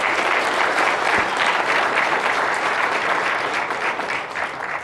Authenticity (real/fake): fake